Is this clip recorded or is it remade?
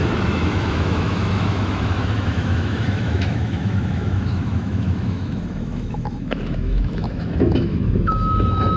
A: remade